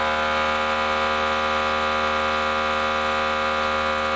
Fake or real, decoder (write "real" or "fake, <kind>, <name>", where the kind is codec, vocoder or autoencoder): real